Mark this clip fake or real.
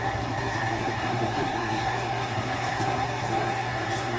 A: fake